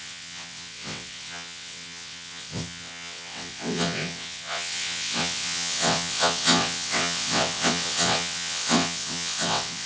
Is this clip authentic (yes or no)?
no